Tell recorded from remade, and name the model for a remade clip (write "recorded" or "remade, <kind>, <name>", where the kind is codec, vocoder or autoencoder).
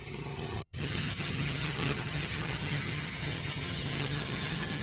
remade, vocoder, HiFi-GAN